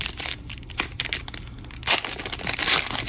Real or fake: real